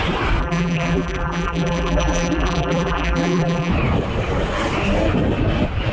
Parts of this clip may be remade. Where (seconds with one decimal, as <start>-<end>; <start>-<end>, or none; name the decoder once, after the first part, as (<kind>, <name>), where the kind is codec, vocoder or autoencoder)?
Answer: 0.4-3.7 (vocoder, BigVGAN v2)